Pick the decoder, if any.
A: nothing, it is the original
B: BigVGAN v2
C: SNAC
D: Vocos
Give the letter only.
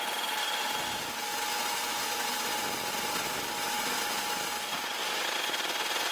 A